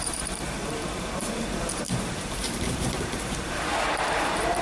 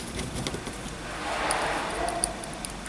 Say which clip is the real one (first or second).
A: second